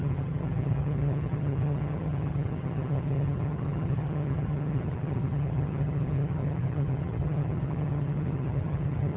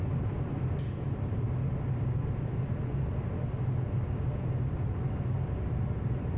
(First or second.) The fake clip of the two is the first